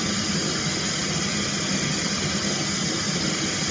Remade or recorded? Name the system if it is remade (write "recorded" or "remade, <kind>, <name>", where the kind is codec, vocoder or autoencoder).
recorded